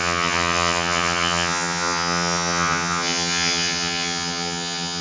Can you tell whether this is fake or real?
fake